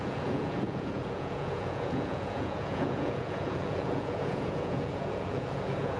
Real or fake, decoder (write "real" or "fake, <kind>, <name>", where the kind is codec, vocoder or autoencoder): fake, vocoder, Vocos